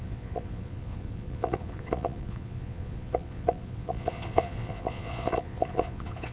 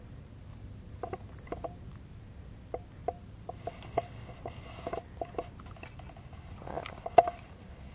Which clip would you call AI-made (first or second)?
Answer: first